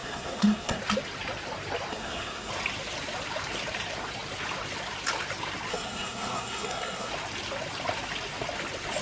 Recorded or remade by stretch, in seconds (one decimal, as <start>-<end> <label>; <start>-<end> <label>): 0.0-0.8 remade; 0.8-1.9 recorded; 1.9-2.5 remade; 2.5-5.7 recorded; 5.7-7.1 remade; 7.1-9.0 recorded